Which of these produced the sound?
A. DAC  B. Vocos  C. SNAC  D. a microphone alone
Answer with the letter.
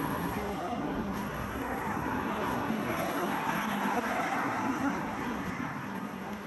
C